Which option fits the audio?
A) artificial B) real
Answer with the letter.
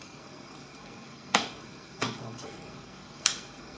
A